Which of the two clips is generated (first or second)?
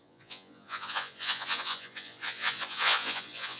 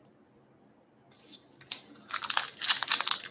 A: first